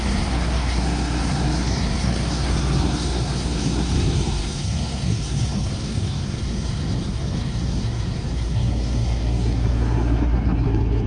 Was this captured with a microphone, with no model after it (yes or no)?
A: no